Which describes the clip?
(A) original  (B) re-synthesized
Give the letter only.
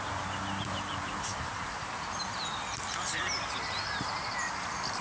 B